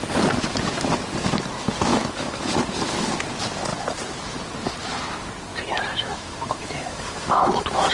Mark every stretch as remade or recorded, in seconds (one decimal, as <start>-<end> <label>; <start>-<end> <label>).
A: 0.0-1.9 recorded; 1.9-2.5 remade; 2.5-5.5 recorded; 5.5-7.9 remade